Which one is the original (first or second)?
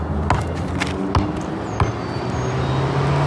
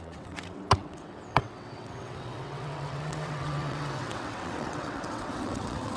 first